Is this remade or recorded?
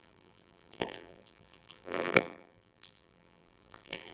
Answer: remade